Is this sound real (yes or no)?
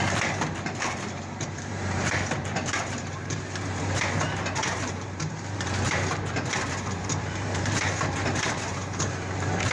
no